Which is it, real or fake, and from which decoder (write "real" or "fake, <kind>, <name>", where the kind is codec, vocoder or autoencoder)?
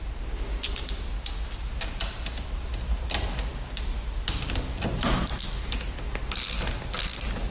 real